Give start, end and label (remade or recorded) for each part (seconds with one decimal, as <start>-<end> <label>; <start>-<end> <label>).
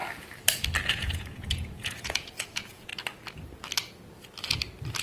0.0-0.9 recorded; 0.9-2.9 remade; 2.9-5.0 recorded